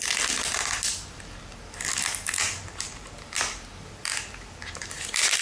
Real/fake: real